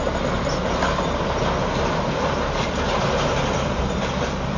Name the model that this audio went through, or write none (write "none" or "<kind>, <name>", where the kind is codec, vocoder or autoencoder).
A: none